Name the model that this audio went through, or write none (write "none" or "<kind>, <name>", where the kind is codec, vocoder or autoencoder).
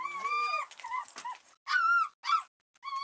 none